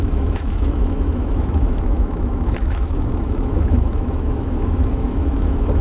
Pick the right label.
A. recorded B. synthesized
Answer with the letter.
B